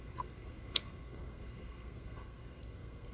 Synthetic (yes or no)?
yes